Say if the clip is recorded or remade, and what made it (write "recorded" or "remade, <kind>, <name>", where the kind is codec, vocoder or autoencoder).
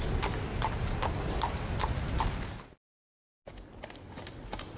recorded